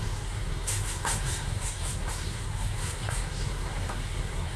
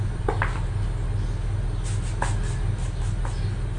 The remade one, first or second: first